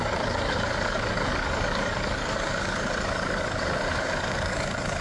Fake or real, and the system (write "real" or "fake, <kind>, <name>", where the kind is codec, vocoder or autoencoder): fake, codec, DAC